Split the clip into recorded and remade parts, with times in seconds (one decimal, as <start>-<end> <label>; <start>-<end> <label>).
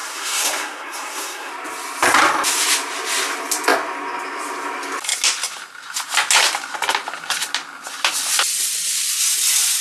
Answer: 0.0-1.5 remade; 1.5-9.8 recorded